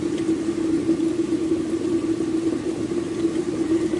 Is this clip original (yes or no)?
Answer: yes